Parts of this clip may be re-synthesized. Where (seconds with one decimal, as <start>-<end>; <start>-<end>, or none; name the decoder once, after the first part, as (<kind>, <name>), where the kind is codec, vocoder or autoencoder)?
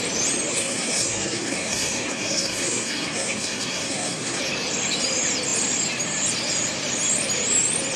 0.5-4.4 (codec, SNAC)